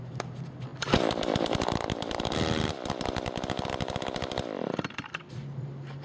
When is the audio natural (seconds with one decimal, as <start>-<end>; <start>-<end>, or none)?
0.0-6.0